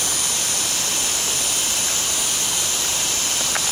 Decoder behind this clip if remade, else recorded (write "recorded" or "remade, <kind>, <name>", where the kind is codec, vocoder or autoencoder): recorded